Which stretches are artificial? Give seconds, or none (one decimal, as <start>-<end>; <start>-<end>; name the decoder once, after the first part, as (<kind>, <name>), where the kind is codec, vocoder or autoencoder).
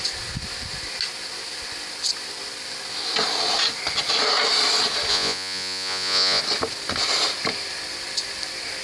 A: 5.1-6.4 (vocoder, Vocos)